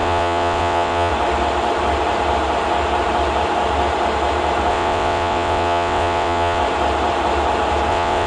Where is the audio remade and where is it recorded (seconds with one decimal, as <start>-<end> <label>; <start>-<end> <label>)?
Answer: 0.0-1.1 remade; 1.1-4.7 recorded; 4.7-6.6 remade; 6.6-7.9 recorded; 7.9-8.3 remade